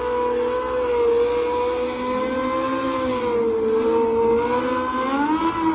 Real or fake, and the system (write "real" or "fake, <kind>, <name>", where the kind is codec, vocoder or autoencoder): real